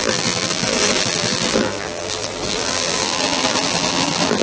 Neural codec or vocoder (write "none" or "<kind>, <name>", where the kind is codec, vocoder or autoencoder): vocoder, BigVGAN v2